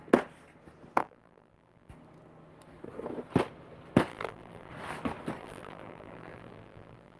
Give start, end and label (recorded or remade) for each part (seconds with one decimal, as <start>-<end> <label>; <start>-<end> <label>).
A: 0.0-1.0 recorded; 1.0-1.9 remade; 1.9-4.1 recorded; 4.1-4.7 remade; 4.7-5.4 recorded; 5.4-7.2 remade